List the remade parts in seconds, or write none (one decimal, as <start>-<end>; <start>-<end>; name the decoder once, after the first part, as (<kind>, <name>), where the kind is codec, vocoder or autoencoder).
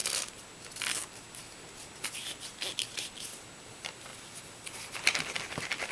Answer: none